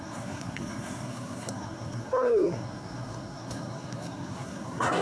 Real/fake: fake